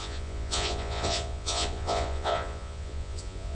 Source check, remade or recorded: remade